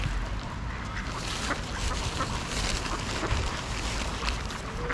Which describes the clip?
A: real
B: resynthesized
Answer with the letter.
A